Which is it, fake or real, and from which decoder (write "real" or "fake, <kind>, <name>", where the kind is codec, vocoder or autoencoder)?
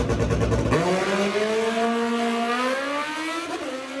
real